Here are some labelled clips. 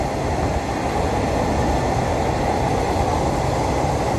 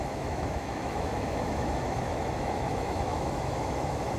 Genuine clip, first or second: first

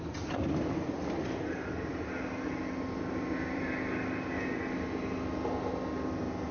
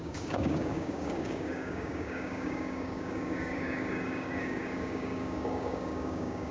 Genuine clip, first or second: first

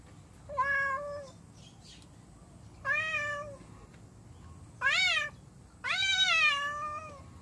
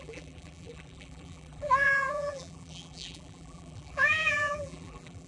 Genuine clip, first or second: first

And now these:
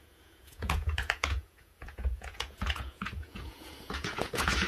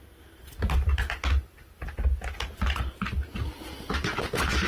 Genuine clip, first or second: second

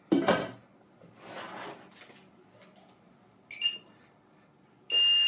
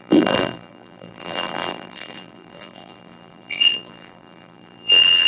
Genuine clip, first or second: first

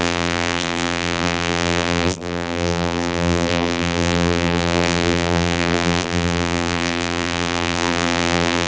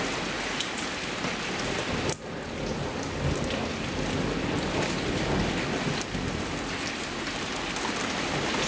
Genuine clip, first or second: second